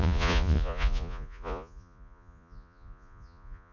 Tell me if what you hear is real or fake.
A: fake